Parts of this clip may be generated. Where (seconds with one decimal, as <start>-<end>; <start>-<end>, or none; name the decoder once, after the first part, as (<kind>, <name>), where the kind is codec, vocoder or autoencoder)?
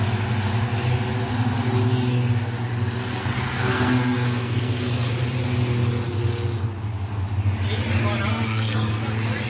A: 3.1-5.1 (codec, SNAC); 8.3-9.0